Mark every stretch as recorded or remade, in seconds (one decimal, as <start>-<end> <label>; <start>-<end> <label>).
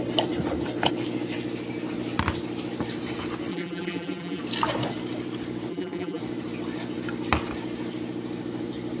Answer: 0.0-3.5 recorded; 3.5-4.4 remade; 4.4-5.7 recorded; 5.7-6.2 remade; 6.2-9.0 recorded